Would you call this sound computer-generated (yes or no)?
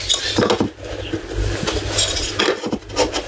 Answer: no